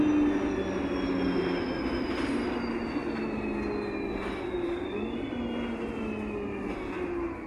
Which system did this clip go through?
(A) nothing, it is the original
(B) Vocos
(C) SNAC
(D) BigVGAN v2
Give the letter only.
A